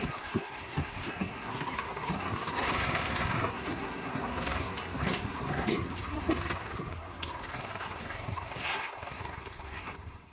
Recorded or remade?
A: remade